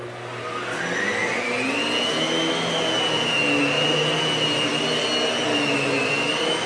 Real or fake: real